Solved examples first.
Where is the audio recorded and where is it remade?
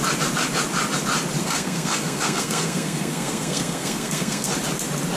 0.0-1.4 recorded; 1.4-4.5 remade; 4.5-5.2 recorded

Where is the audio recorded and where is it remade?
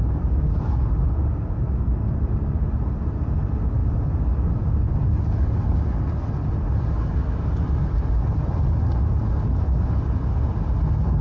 0.0-11.2 recorded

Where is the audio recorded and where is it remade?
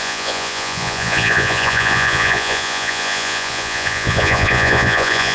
0.0-5.3 remade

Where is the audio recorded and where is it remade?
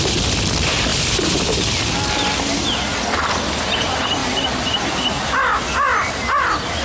0.0-6.8 recorded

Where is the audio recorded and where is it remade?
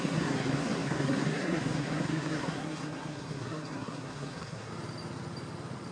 0.0-4.7 remade; 4.7-5.9 recorded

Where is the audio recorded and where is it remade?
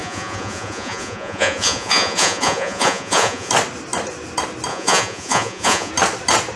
0.0-3.5 remade; 3.5-4.7 recorded; 4.7-5.9 remade; 5.9-6.6 recorded